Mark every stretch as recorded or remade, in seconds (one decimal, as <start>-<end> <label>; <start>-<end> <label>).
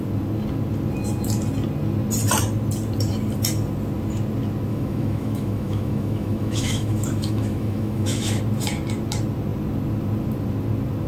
0.0-4.7 recorded; 4.7-8.4 remade; 8.4-11.1 recorded